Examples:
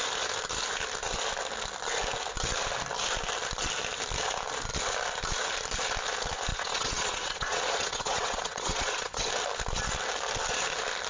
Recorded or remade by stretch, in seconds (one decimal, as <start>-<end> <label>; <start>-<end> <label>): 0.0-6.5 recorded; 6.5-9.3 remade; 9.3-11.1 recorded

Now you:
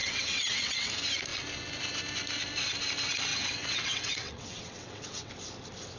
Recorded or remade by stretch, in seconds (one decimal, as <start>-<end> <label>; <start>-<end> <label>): 0.0-0.9 remade; 0.9-3.3 recorded; 3.3-5.3 remade; 5.3-6.0 recorded

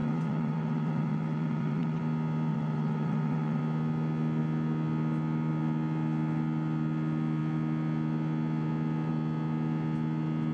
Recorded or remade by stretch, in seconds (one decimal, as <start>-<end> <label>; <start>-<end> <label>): 0.0-2.0 remade; 2.0-2.5 recorded; 2.5-3.6 remade; 3.6-10.5 recorded

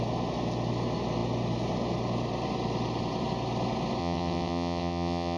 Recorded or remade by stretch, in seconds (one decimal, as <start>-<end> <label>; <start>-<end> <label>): 0.0-4.0 recorded; 4.0-5.4 remade